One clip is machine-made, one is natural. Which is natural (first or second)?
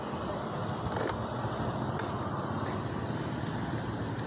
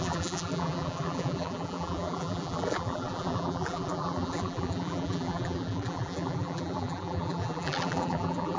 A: first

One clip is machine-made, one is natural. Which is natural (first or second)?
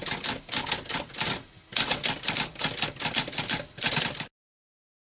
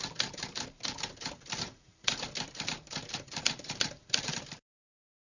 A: first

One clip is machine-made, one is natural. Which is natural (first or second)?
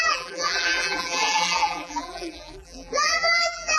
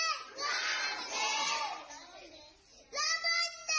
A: second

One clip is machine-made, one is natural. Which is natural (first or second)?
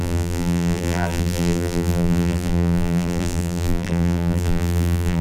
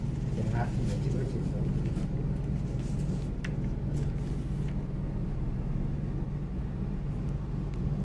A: second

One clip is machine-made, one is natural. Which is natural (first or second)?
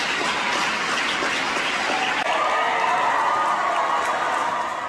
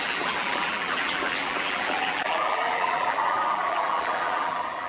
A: first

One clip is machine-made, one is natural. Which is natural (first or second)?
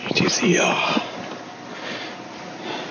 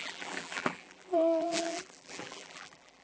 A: first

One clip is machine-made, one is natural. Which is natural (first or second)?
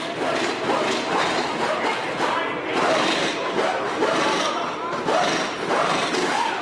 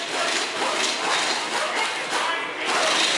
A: second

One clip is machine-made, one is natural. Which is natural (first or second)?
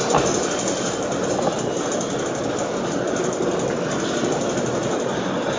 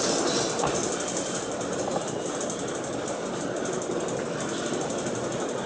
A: first